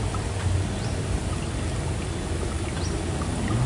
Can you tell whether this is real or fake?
real